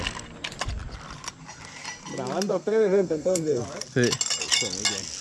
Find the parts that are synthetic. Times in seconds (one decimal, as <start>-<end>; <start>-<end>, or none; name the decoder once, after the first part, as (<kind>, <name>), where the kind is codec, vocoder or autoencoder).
2.5-3.6 (codec, SNAC)